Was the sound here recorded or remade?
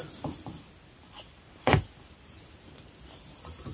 recorded